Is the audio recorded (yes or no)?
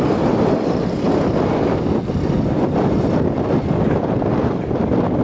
yes